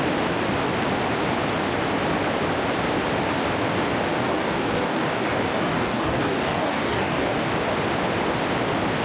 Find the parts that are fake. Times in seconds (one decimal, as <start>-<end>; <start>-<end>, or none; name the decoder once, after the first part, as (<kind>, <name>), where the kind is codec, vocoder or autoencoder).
4.2-7.4 (codec, DAC)